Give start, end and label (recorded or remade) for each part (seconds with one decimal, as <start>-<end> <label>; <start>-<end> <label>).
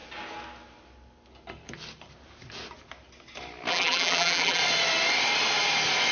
0.0-3.7 recorded; 3.7-4.6 remade; 4.6-6.1 recorded